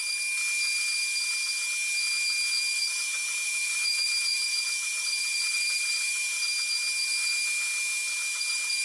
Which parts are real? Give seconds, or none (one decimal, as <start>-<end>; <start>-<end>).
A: 0.0-2.8; 6.4-8.8